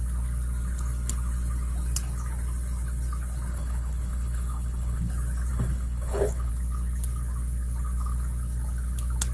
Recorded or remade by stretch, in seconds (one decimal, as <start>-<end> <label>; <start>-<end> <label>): 0.0-3.5 recorded; 3.5-5.1 remade; 5.1-5.5 recorded; 5.5-6.5 remade; 6.5-9.3 recorded